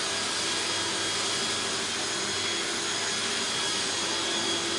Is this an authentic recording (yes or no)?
yes